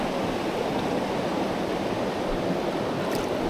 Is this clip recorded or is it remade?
recorded